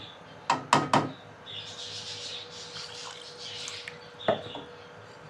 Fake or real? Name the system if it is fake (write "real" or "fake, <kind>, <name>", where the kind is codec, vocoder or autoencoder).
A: real